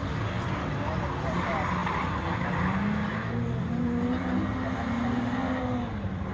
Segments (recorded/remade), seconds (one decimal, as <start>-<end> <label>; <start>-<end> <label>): 0.0-6.3 recorded